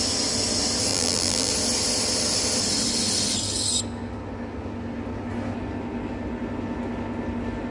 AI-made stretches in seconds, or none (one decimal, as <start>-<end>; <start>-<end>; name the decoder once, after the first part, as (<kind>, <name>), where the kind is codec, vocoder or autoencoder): 0.9-1.5 (vocoder, BigVGAN v2)